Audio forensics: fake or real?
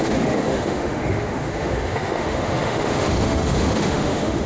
fake